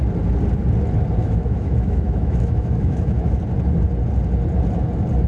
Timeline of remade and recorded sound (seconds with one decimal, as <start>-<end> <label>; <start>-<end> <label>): 0.0-1.2 recorded; 1.2-3.4 remade; 3.4-5.3 recorded